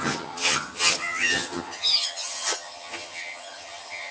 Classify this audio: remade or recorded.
remade